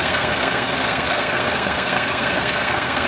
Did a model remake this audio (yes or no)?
yes